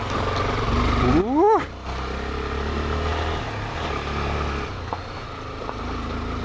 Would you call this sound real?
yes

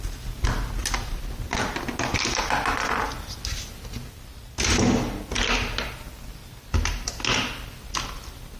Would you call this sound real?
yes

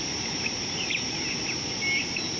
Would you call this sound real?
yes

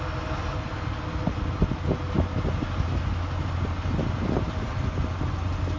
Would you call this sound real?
yes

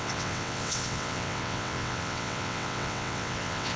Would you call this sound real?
no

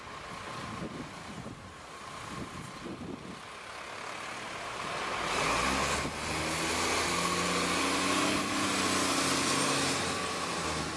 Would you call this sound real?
yes